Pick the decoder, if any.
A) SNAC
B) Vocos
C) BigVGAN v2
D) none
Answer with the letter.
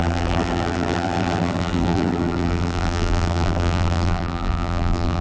C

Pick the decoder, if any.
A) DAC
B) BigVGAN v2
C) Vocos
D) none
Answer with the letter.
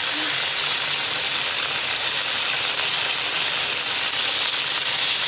D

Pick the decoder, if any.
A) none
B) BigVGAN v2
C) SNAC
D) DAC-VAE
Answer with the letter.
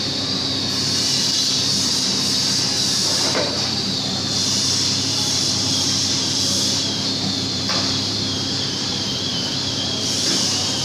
B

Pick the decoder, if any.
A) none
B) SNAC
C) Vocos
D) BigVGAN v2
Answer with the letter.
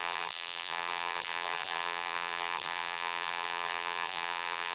D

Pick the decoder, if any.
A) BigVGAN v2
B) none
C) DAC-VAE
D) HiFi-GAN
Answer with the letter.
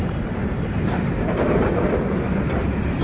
A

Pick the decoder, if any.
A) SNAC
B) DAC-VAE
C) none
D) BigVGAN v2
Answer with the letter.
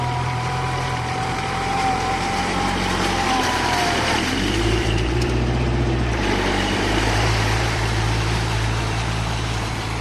D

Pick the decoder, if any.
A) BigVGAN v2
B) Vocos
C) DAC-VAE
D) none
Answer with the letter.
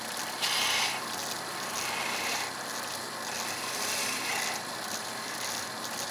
D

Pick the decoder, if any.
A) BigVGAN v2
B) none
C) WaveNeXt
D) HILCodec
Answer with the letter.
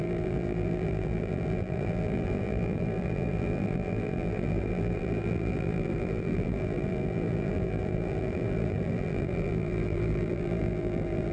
A